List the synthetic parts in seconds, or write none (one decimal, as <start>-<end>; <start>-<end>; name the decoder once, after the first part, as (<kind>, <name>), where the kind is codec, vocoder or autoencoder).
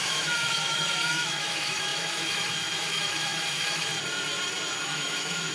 0.0-3.9 (autoencoder, DAC-VAE); 4.8-5.5